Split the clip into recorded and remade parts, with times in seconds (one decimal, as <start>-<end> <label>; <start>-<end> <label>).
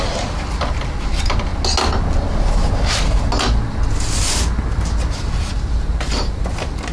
0.0-6.9 recorded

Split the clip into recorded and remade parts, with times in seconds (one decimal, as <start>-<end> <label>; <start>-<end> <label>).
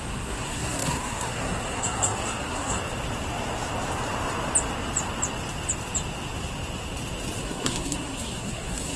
0.0-2.8 remade; 2.8-7.4 recorded; 7.4-9.0 remade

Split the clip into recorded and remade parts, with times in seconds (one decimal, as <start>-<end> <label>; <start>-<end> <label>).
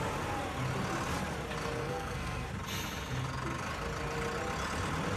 0.0-1.8 recorded; 1.8-2.5 remade; 2.5-5.2 recorded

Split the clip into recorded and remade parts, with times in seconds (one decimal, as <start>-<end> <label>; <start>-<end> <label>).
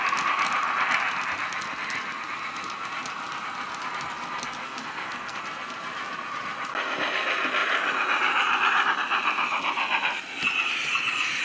0.0-4.6 recorded; 4.6-5.4 remade; 5.4-11.4 recorded